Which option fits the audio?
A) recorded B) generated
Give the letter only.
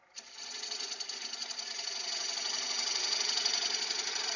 B